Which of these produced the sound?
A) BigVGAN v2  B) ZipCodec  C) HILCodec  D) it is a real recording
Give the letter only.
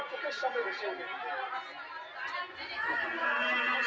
D